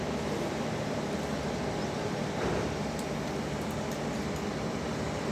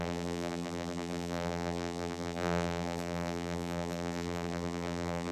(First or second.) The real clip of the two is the first